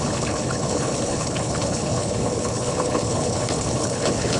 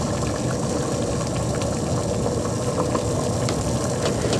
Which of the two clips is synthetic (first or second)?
first